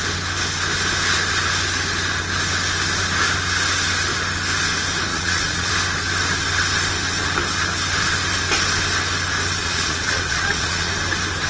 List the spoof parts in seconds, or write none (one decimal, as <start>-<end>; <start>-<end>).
5.1-5.7; 9.6-10.9